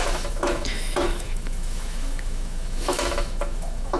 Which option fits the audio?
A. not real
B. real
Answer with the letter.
A